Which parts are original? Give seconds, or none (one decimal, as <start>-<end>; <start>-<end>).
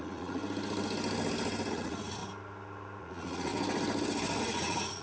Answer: 0.4-1.7; 2.2-3.0; 3.5-4.4